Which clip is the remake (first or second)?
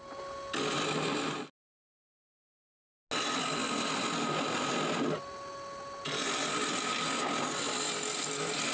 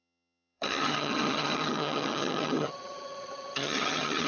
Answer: second